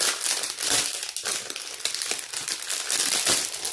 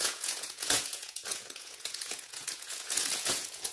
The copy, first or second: second